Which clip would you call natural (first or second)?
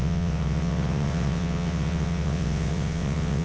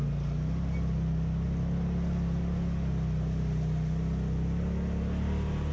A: second